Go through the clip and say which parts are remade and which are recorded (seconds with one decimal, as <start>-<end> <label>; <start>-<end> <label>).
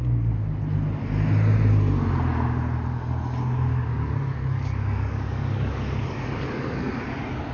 0.0-3.7 recorded; 3.7-6.9 remade; 6.9-7.5 recorded